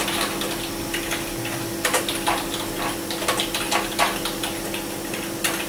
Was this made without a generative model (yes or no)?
yes